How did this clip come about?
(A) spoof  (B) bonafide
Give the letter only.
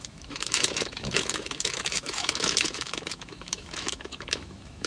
A